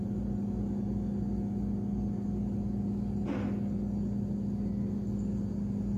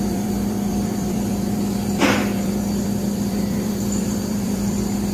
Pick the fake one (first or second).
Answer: second